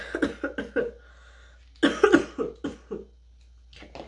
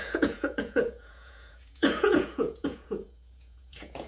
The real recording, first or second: first